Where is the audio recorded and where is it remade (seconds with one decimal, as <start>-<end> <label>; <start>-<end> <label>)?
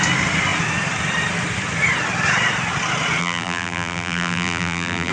0.0-3.2 recorded; 3.2-5.1 remade